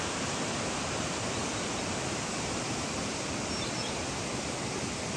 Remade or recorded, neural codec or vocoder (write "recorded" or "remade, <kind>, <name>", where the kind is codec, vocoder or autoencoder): recorded